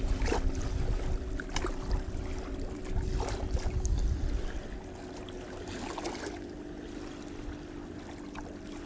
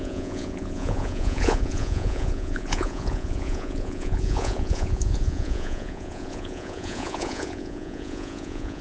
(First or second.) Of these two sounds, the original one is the first